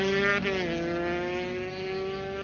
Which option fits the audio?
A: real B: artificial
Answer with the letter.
A